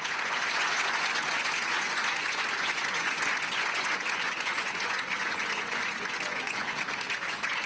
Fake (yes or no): yes